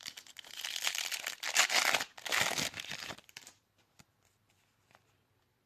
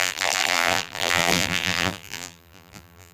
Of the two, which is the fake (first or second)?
second